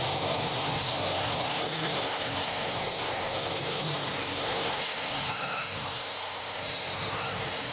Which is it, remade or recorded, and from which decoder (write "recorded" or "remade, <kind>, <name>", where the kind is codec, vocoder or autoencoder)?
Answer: remade, codec, SNAC